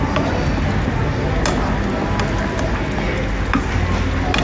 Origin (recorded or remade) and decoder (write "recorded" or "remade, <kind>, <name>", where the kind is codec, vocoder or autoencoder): recorded